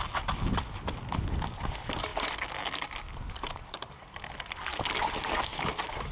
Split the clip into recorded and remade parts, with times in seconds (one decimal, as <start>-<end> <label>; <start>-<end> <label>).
0.0-6.1 recorded